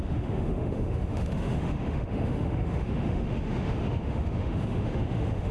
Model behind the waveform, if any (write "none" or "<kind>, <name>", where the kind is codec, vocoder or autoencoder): autoencoder, DAC-VAE